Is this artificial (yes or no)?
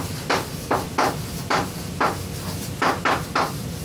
yes